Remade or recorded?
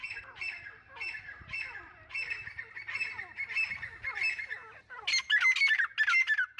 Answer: recorded